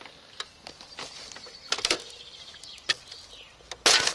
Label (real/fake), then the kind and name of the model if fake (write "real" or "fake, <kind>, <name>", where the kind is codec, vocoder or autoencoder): real